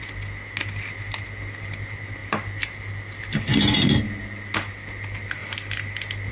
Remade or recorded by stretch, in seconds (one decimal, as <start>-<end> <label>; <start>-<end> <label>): 0.0-6.3 recorded

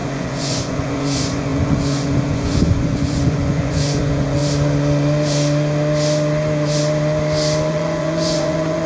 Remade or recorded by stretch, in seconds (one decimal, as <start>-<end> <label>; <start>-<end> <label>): 0.0-4.4 remade; 4.4-7.7 recorded; 7.7-8.9 remade

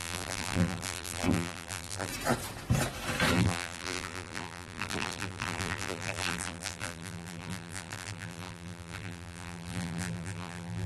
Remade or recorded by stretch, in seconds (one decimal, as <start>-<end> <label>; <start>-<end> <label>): 0.0-2.1 remade; 2.1-3.3 recorded; 3.3-10.9 remade

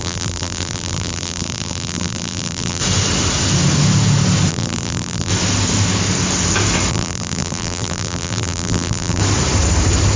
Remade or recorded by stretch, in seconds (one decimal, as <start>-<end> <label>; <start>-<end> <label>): 0.0-2.8 remade; 2.8-4.5 recorded; 4.5-5.3 remade; 5.3-6.9 recorded; 6.9-9.2 remade; 9.2-10.2 recorded